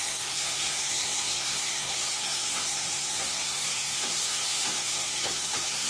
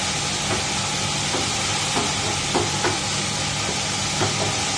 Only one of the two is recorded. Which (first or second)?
second